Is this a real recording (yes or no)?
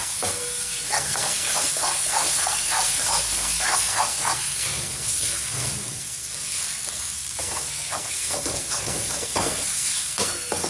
no